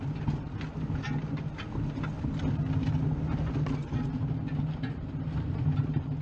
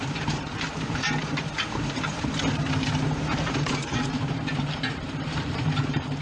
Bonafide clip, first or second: first